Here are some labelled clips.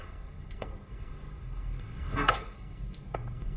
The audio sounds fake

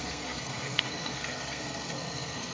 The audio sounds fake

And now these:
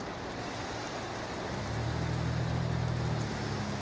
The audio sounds real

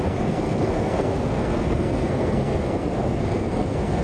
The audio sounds fake